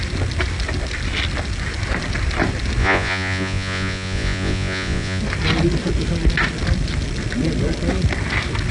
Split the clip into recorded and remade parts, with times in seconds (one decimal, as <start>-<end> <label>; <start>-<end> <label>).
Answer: 0.0-2.8 recorded; 2.8-5.2 remade; 5.2-8.7 recorded